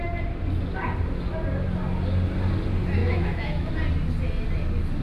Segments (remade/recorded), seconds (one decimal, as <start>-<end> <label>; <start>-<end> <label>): 0.0-3.0 recorded; 3.0-3.7 remade; 3.7-5.0 recorded